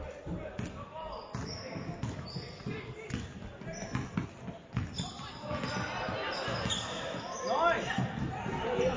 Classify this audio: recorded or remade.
recorded